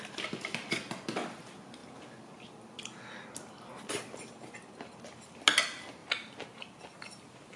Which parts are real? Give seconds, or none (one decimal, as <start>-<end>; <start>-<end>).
0.0-7.6